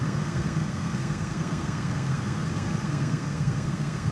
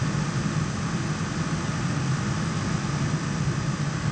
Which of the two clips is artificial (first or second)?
first